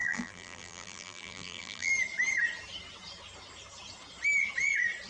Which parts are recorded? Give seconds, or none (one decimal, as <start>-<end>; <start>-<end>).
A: 1.9-5.1